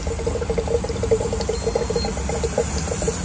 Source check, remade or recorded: recorded